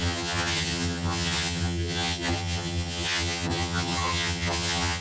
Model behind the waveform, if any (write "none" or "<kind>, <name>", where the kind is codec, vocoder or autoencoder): vocoder, HiFi-GAN